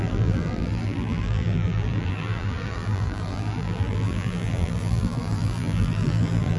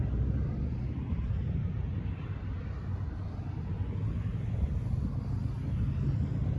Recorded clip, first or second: second